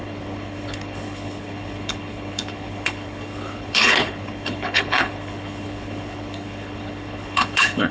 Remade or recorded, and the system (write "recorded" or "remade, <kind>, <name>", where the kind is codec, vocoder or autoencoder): remade, codec, HILCodec